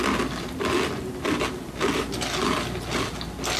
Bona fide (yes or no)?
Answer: yes